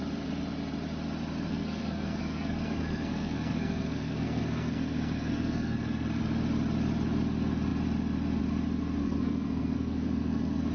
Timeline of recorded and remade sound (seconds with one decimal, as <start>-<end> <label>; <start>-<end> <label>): 0.0-1.5 recorded; 1.5-6.2 remade; 6.2-9.0 recorded; 9.0-10.7 remade